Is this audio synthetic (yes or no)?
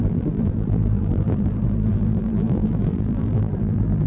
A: yes